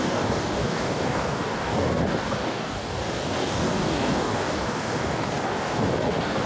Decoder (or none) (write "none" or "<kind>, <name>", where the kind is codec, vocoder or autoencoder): codec, DAC